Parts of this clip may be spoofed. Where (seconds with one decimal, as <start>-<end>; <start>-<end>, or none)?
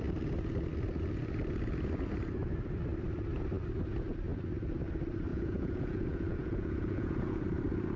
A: 5.3-7.4